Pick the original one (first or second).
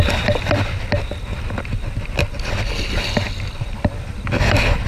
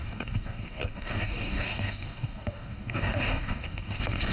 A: first